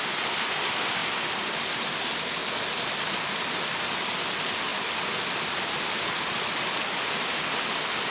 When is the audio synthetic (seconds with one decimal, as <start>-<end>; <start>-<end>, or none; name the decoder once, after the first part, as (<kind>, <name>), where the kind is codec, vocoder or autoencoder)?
none